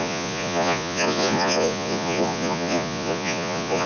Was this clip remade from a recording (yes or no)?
yes